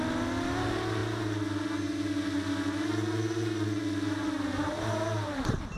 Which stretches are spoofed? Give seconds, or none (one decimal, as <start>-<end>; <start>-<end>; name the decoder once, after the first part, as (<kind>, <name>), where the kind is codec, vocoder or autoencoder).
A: none